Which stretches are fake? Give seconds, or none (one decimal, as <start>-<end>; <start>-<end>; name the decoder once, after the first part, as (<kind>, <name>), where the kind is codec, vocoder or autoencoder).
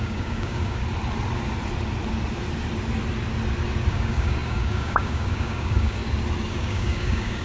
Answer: 0.0-0.8 (codec, DAC); 3.9-6.0; 6.5-7.4